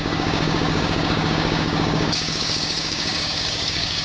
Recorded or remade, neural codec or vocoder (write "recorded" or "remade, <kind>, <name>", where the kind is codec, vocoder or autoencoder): remade, codec, DAC